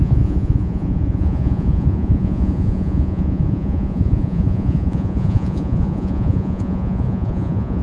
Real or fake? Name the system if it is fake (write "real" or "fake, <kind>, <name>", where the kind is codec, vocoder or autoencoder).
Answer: fake, vocoder, Vocos